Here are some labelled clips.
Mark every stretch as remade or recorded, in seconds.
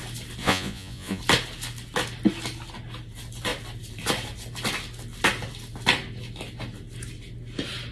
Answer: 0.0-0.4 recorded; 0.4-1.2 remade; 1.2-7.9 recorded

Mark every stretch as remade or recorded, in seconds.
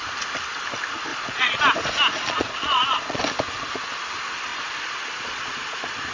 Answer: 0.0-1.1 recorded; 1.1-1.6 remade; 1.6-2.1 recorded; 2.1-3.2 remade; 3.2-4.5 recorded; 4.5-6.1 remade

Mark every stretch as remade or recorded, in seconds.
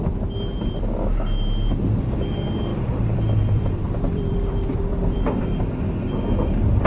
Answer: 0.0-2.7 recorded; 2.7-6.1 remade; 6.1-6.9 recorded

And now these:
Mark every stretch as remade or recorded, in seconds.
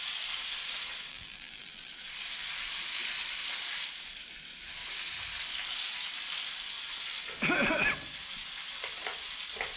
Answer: 0.0-1.1 recorded; 1.1-1.9 remade; 1.9-9.8 recorded